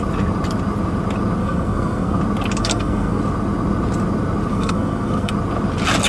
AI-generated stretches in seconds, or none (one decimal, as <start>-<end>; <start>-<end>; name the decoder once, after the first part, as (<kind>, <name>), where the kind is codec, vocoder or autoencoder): 1.4-2.2 (codec, SNAC); 2.6-3.2; 4.5-5.3